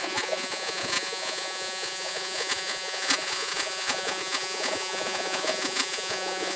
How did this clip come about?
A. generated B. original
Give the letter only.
A